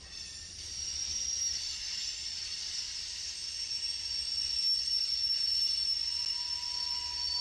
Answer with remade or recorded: recorded